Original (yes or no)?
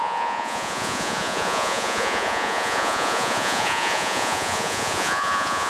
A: no